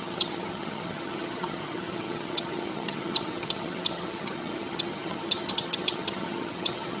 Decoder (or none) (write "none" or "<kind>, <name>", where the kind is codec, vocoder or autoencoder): vocoder, HiFi-GAN